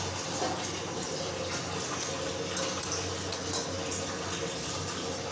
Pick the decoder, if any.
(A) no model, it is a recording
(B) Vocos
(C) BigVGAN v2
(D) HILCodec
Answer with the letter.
A